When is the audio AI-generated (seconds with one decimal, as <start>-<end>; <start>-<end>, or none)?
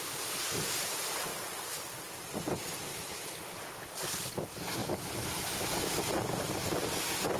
2.9-3.4